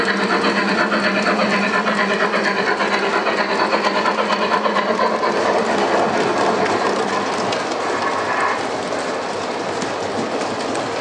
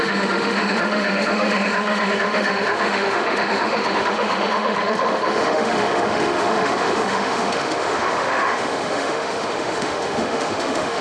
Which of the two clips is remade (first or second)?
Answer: second